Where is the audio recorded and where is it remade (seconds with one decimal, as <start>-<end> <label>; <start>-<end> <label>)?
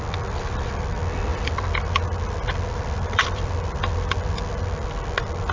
0.0-1.3 recorded; 1.3-4.6 remade; 4.6-5.5 recorded